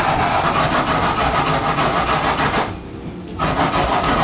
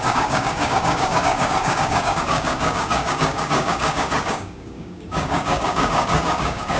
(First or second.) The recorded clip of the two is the first